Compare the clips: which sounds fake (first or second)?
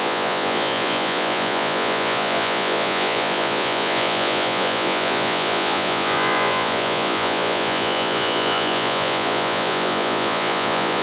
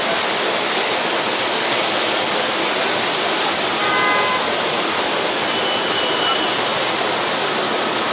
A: first